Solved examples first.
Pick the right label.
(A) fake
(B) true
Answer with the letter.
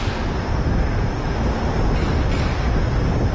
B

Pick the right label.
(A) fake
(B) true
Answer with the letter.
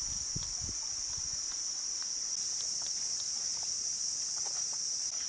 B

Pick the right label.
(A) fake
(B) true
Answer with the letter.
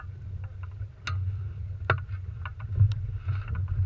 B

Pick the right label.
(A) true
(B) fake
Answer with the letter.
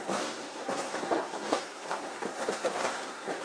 B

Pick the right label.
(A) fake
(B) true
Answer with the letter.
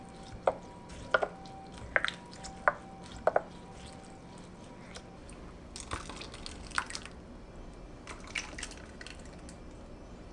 B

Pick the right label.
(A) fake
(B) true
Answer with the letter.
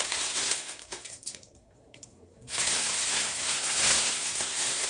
A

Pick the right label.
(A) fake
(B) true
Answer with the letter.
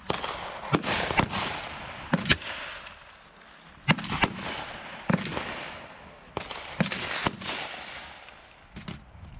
B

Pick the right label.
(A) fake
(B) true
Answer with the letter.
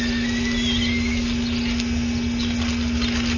B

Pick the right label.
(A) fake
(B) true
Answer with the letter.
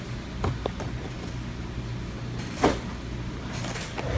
B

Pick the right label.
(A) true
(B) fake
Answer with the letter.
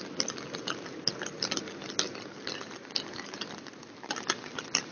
A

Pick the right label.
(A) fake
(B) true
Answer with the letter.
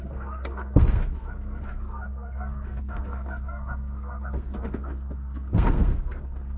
A